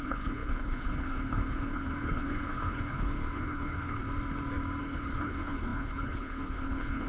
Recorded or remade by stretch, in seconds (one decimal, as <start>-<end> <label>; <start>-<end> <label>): 0.0-4.0 remade; 4.0-4.8 recorded; 4.8-7.1 remade